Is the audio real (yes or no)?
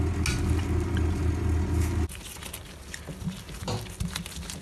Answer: yes